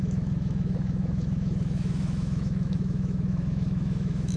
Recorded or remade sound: remade